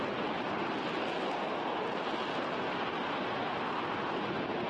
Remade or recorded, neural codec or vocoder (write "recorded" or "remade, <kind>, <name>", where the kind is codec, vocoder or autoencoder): recorded